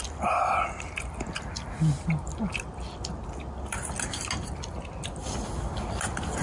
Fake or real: real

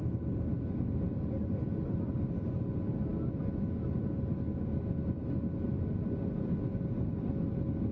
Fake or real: real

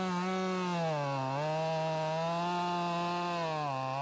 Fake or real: real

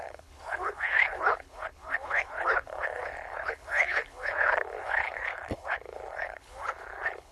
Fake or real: fake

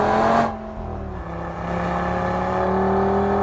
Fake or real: real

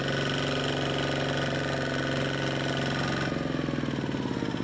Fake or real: real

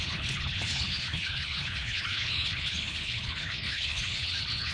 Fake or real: fake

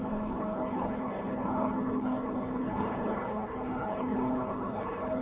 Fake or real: fake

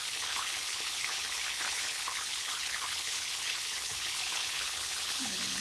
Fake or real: fake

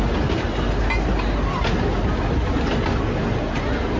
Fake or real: real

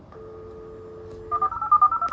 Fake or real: real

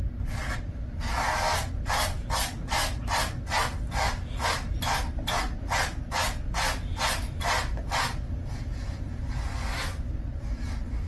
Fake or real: real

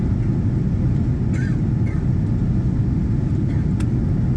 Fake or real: real